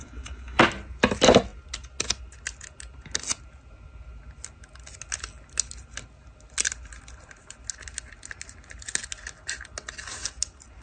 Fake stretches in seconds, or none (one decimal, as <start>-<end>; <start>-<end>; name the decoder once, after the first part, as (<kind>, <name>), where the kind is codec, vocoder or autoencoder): 0.0-0.6 (codec, DAC)